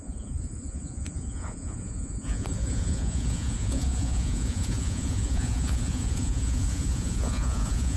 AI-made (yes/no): yes